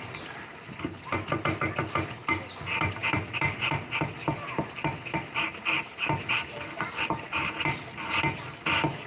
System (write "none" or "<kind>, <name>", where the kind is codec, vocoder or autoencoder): none